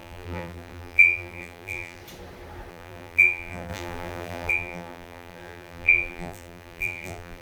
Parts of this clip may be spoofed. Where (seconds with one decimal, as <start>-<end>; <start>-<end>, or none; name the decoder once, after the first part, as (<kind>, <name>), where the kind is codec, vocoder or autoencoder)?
0.0-2.0 (vocoder, BigVGAN v2); 2.7-7.4